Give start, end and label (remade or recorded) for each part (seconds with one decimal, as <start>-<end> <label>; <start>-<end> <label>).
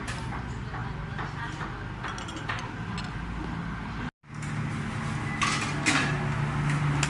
0.0-7.1 recorded